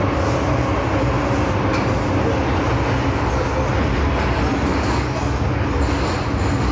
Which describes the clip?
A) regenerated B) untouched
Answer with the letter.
B